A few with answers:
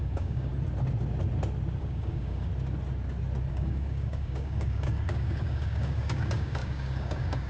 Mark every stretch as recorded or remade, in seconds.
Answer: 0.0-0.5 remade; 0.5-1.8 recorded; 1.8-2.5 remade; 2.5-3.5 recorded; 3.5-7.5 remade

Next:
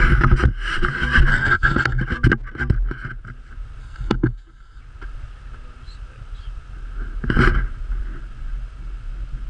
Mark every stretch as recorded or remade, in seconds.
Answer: 0.0-1.3 recorded; 1.3-2.0 remade; 2.0-3.8 recorded; 3.8-4.8 remade; 4.8-9.5 recorded

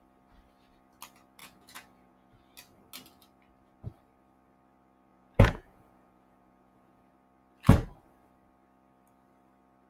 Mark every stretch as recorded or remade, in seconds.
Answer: 0.0-1.4 recorded; 1.4-2.3 remade; 2.3-5.1 recorded; 5.1-7.1 remade; 7.1-9.9 recorded

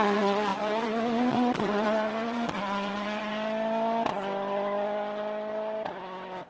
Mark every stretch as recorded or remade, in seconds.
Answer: 0.0-3.3 remade; 3.3-6.5 recorded

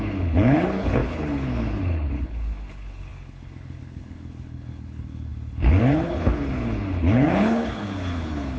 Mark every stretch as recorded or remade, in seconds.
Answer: 0.0-8.6 remade